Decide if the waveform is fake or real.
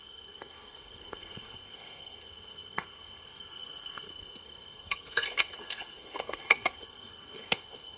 fake